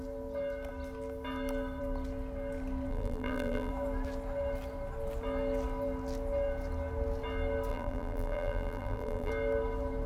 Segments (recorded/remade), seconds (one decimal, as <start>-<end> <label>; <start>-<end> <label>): 0.0-2.9 recorded; 2.9-3.7 remade; 3.7-7.7 recorded; 7.7-9.3 remade; 9.3-10.1 recorded